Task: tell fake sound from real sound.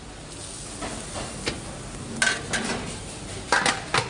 real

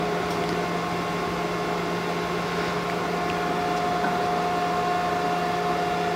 real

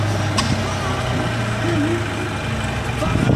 real